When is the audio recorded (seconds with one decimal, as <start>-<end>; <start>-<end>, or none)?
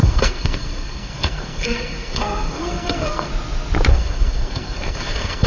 3.3-3.9